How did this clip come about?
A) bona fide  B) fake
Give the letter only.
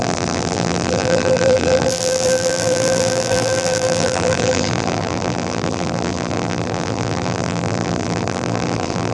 B